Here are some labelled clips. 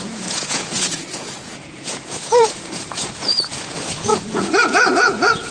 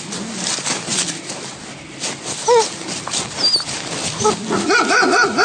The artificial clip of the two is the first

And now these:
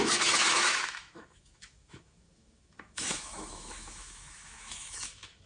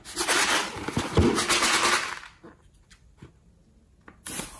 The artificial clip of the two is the first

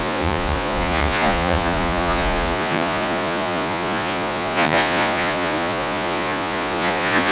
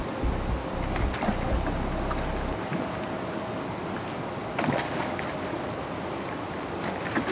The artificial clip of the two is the first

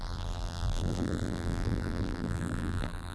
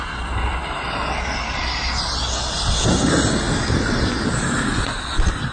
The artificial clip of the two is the first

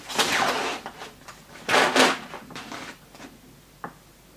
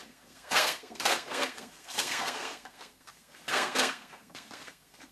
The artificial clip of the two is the second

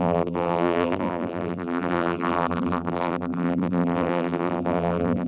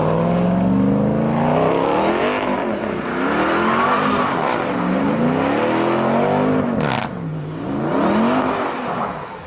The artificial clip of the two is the first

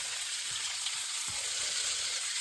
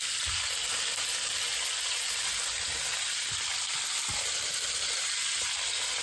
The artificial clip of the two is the first